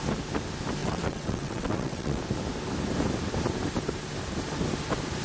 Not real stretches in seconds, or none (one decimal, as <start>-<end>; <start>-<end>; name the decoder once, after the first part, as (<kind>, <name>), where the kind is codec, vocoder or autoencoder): 0.8-2.2 (vocoder, WaveNeXt)